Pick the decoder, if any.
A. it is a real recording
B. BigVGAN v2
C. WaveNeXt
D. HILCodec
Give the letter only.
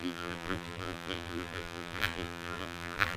B